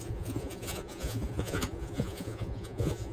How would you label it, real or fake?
fake